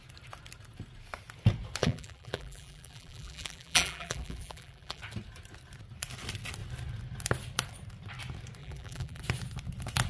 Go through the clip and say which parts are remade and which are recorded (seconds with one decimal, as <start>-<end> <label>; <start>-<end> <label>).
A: 0.0-1.8 recorded; 1.8-5.0 remade; 5.0-8.6 recorded; 8.6-9.2 remade; 9.2-10.1 recorded